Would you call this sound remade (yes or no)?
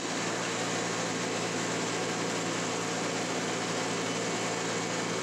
no